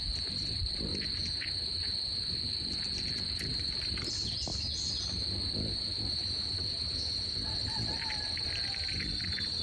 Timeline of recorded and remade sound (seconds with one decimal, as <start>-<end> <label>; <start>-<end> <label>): 0.0-0.9 remade; 0.9-2.3 recorded; 2.3-4.5 remade; 4.5-7.6 recorded; 7.6-9.6 remade